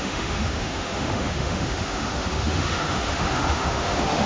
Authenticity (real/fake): fake